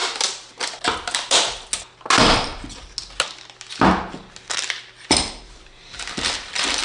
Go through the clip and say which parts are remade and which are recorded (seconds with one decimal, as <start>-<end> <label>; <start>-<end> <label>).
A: 0.0-0.6 remade; 0.6-6.8 recorded